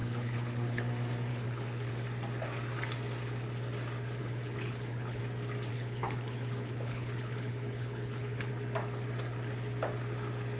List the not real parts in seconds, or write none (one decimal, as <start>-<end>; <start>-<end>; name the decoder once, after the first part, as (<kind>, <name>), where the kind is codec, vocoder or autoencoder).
0.0-0.8 (codec, HILCodec); 1.3-1.9; 4.2-5.2; 5.7-8.5